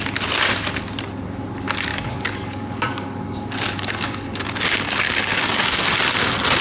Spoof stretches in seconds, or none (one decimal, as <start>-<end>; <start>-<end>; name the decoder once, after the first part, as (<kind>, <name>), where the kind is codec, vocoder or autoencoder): 1.9-5.9 (codec, DAC)